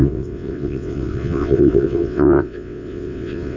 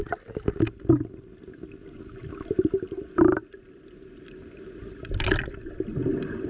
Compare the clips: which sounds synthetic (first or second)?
first